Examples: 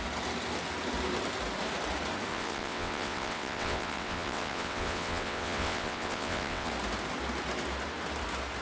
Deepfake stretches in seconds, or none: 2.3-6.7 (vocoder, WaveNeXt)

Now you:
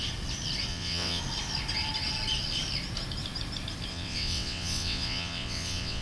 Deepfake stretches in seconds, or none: 0.7-1.2 (vocoder, WaveNeXt); 3.9-6.0

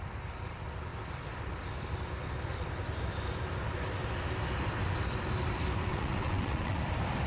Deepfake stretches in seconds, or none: 5.9-6.8 (vocoder, WaveNeXt)